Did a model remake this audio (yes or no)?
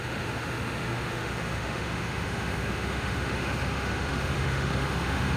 yes